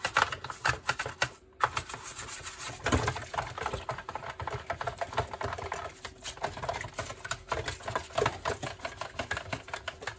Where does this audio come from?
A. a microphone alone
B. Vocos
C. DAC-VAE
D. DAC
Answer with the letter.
A